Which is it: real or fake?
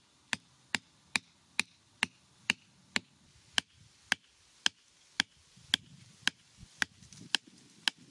real